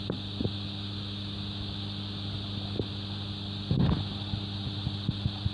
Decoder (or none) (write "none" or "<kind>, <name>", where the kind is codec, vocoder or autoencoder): none